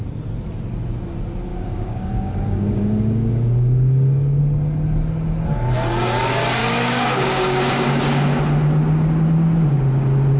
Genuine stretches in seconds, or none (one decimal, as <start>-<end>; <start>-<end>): 0.0-1.5; 4.4-6.6; 8.4-10.4